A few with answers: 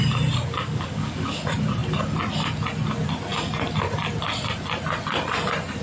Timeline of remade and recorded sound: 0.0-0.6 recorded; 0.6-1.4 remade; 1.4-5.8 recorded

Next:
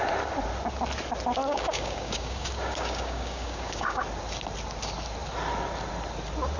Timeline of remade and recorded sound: 0.0-1.5 recorded; 1.5-4.0 remade; 4.0-6.6 recorded